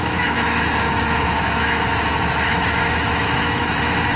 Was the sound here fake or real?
fake